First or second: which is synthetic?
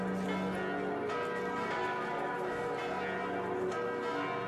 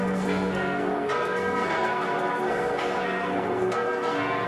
second